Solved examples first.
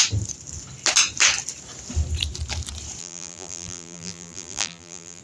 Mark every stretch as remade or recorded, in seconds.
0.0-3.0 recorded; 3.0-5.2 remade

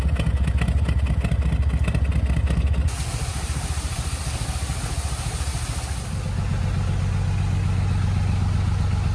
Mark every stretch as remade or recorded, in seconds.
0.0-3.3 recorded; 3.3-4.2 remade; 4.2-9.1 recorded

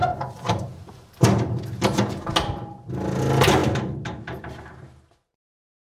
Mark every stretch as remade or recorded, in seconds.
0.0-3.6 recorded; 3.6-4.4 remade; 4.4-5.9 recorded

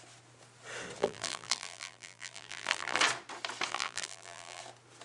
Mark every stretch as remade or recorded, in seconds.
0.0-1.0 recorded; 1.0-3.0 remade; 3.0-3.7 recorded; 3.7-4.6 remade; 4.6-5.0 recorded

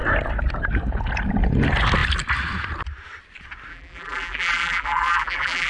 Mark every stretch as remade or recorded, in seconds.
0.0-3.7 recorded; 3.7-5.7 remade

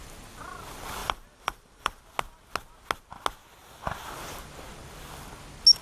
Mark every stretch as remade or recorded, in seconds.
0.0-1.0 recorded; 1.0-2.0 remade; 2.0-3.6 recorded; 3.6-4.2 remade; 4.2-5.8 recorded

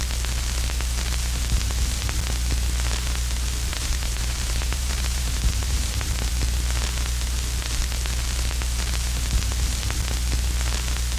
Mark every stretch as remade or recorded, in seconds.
0.0-3.7 recorded; 3.7-6.3 remade; 6.3-11.2 recorded